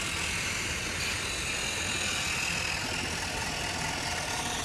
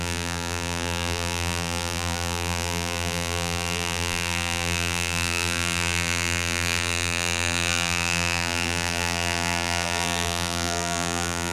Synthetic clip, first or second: second